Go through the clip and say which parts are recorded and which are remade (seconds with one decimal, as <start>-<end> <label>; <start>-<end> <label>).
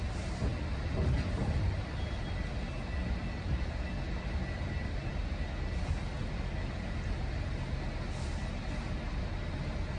0.0-0.5 recorded; 0.5-2.7 remade; 2.7-10.0 recorded